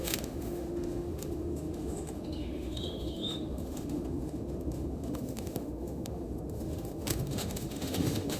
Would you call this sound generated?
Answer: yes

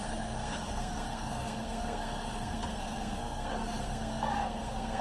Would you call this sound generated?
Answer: yes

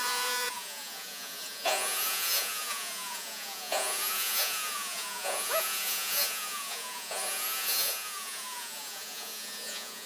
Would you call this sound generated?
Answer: yes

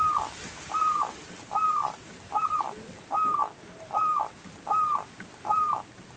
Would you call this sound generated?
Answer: no